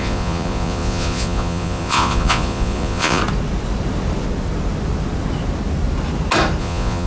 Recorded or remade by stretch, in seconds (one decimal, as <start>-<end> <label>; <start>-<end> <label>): 0.0-3.2 remade; 3.2-6.6 recorded; 6.6-7.1 remade